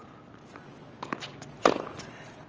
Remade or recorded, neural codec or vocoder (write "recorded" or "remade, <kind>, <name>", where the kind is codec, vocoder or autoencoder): recorded